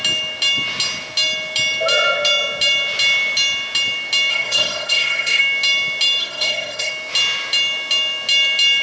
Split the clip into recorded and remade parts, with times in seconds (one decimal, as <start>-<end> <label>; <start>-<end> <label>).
0.0-4.3 recorded; 4.3-5.4 remade; 5.4-6.2 recorded; 6.2-6.9 remade; 6.9-8.8 recorded